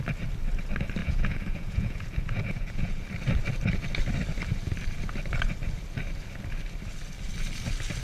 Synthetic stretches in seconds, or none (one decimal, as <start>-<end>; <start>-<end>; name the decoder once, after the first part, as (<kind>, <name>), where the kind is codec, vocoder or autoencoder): 1.0-3.0 (vocoder, Vocos)